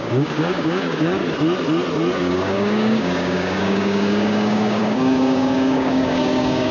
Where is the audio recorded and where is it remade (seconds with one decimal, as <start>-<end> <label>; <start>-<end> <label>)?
0.0-1.2 remade; 1.2-2.2 recorded; 2.2-6.7 remade